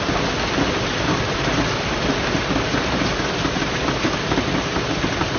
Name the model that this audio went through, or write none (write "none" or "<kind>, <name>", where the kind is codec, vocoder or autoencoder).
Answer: none